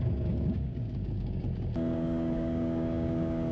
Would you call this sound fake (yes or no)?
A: yes